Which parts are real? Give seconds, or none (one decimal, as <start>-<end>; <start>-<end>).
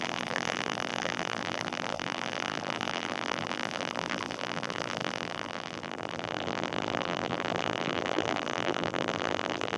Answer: none